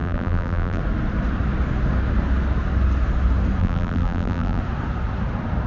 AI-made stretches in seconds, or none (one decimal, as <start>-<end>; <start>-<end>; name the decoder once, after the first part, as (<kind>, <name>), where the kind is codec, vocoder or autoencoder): 0.0-0.8 (vocoder, BigVGAN v2); 3.6-4.6